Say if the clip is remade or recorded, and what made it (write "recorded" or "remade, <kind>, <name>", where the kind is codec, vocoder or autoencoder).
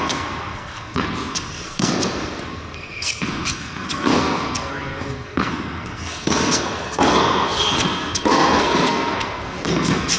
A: remade, codec, SNAC